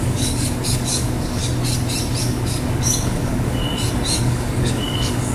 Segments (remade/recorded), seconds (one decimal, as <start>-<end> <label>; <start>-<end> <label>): 0.0-1.4 remade; 1.4-2.2 recorded; 2.2-3.6 remade; 3.6-4.2 recorded; 4.2-5.3 remade